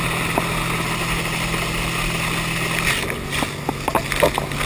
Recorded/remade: recorded